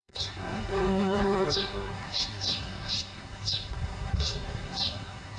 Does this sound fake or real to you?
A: fake